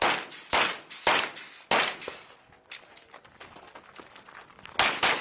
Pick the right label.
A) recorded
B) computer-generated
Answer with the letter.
A